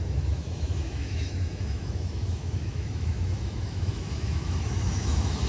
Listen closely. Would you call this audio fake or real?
fake